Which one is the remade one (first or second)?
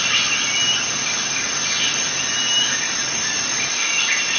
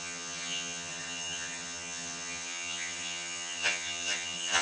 second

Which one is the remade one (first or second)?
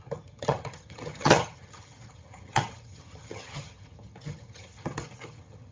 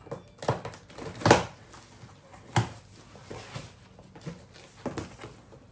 first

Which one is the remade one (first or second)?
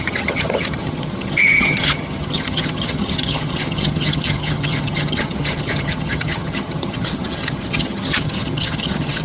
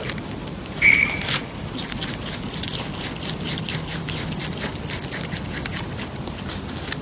first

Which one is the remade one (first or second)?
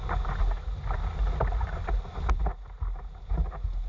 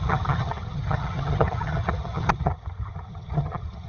second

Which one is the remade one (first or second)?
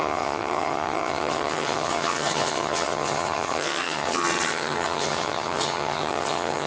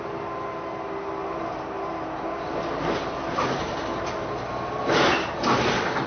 first